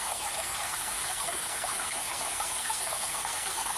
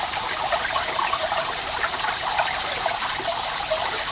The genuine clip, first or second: second